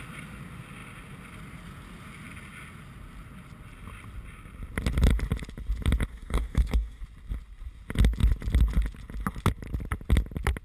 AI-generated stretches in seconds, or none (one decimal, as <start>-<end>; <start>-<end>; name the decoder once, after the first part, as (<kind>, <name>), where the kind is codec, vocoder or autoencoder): 6.1-7.0 (codec, DAC)